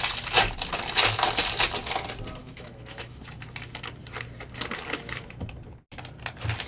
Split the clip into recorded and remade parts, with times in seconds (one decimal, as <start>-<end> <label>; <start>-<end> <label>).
0.0-2.4 recorded; 2.4-3.2 remade; 3.2-6.7 recorded